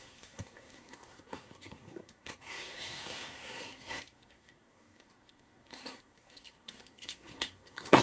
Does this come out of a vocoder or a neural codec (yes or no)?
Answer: yes